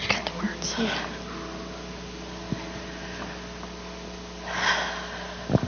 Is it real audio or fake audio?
real